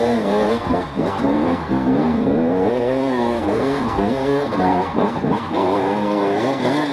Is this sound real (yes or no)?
no